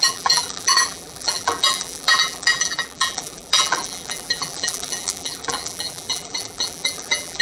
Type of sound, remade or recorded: remade